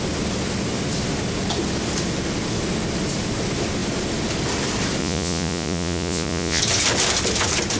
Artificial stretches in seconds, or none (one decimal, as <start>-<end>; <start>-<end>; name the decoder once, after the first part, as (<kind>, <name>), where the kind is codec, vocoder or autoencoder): 5.0-6.6 (vocoder, Vocos)